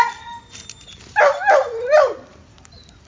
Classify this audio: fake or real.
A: real